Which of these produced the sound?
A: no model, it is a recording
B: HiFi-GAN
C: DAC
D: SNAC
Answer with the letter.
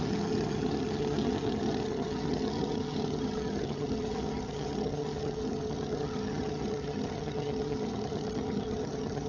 B